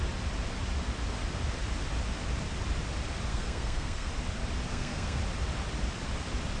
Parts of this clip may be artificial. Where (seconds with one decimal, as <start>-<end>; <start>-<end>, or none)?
3.3-4.1; 4.7-5.2